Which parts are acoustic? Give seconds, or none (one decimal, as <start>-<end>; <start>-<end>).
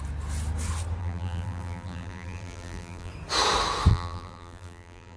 0.0-1.0; 3.1-3.9